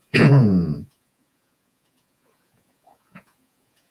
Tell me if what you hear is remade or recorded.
remade